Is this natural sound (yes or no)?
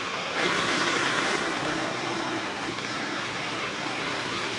no